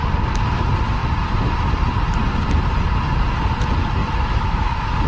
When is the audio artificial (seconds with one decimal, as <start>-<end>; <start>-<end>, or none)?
4.0-5.1